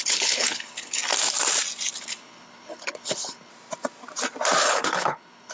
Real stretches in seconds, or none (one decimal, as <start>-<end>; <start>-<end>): 1.0-2.0; 3.5-4.6